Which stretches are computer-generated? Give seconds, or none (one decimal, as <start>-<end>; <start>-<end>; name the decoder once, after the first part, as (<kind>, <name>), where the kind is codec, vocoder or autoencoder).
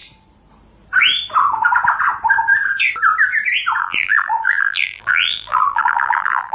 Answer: 3.8-6.5 (vocoder, BigVGAN v2)